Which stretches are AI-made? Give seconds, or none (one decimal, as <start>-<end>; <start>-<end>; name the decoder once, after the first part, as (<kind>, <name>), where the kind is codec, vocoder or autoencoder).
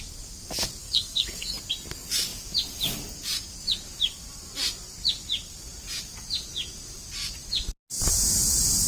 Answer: 0.8-1.5 (codec, SNAC)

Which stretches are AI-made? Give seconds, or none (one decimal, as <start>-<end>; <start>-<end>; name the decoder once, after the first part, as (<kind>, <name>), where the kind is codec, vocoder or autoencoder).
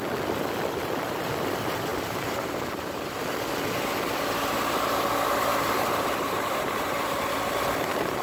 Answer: 5.5-7.5 (vocoder, BigVGAN v2)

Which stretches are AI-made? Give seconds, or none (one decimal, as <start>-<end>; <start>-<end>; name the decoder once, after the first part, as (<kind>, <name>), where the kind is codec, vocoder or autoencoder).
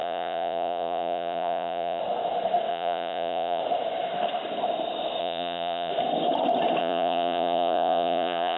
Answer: 0.0-2.0 (vocoder, Vocos); 2.7-3.6; 5.2-5.9; 6.8-8.6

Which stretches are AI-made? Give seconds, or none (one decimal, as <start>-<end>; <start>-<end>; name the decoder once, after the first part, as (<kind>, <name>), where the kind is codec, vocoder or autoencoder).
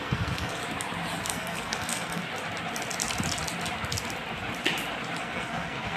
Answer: 0.0-0.6 (codec, SNAC); 1.2-2.2; 5.2-6.0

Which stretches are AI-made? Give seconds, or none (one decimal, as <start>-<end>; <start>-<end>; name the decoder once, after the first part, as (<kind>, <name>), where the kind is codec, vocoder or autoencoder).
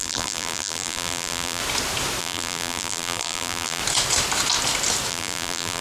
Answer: 0.0-1.6 (vocoder, BigVGAN v2); 2.2-3.8; 5.1-5.8